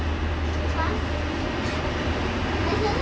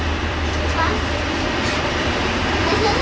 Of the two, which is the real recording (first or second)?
first